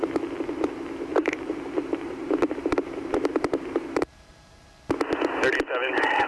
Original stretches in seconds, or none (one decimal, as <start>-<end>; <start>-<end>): 0.0-1.1; 4.7-6.3